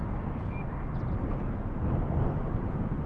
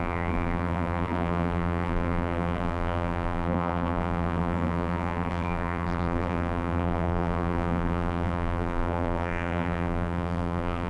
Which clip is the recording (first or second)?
first